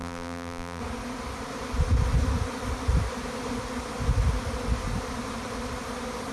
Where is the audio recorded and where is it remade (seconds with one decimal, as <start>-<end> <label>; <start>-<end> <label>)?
0.0-0.8 remade; 0.8-6.3 recorded